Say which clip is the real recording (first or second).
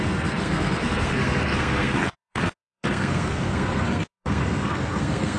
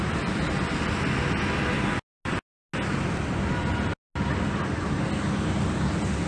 second